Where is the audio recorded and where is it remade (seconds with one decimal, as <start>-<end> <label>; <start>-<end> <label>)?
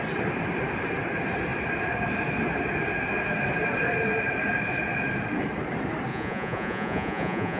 0.0-6.1 recorded; 6.1-7.6 remade